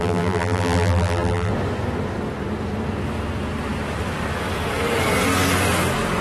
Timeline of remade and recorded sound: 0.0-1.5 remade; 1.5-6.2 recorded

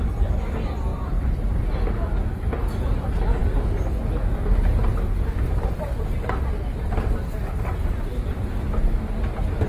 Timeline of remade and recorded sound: 0.0-0.9 recorded; 0.9-1.6 remade; 1.6-4.9 recorded; 4.9-7.0 remade; 7.0-9.7 recorded